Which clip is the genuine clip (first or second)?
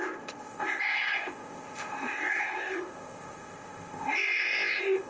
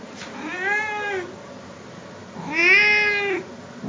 second